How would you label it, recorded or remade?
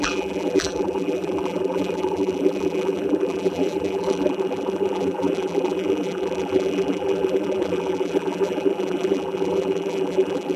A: remade